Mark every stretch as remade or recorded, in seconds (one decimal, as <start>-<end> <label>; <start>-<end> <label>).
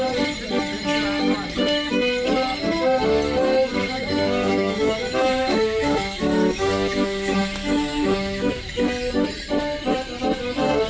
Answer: 0.0-3.7 recorded; 3.7-8.7 remade; 8.7-10.9 recorded